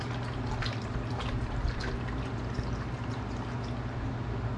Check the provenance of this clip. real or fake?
real